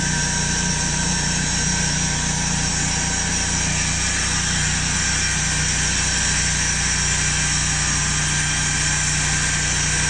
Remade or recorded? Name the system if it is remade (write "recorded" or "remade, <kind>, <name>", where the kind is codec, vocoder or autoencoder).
recorded